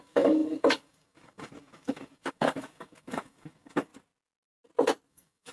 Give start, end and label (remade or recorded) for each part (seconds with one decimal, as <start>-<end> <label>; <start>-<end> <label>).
0.0-3.9 remade; 3.9-5.1 recorded; 5.1-5.5 remade